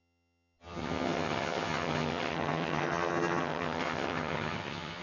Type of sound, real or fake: fake